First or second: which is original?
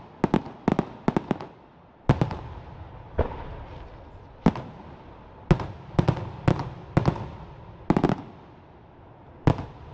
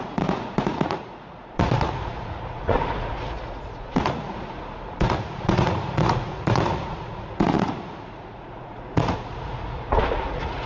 first